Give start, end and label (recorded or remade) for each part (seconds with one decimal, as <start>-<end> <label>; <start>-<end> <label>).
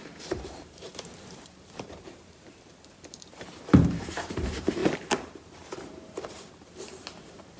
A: 0.0-7.6 remade